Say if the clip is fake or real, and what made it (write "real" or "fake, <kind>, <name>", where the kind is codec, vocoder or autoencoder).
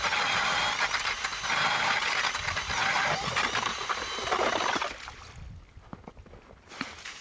real